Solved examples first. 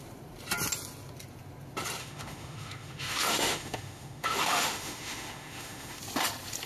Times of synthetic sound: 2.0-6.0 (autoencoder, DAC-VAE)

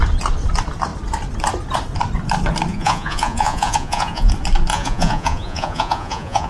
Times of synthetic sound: 2.7-4.3 (vocoder, Vocos); 4.7-6.5

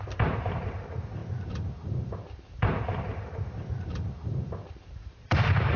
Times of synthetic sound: 0.0-5.8 (vocoder, BigVGAN v2)

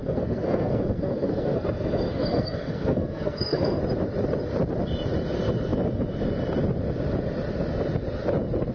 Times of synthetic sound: 0.0-3.8 (codec, SNAC)

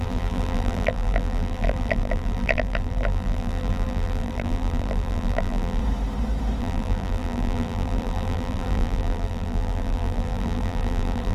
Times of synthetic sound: 0.0-5.8 (vocoder, BigVGAN v2); 6.6-11.3

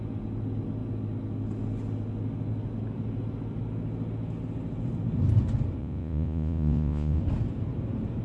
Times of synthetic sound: 5.8-7.2 (vocoder, Vocos)